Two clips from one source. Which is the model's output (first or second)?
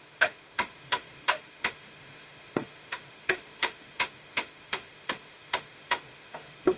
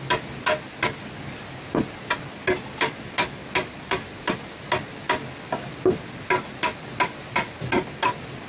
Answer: first